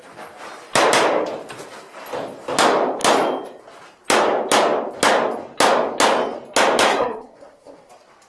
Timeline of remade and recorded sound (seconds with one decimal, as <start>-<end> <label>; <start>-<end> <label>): 0.0-6.9 recorded; 6.9-7.9 remade; 7.9-8.3 recorded